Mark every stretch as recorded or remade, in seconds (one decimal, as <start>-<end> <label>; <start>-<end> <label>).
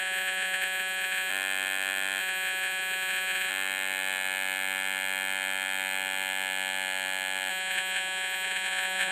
0.0-1.3 remade; 1.3-2.2 recorded; 2.2-3.5 remade; 3.5-7.5 recorded; 7.5-9.1 remade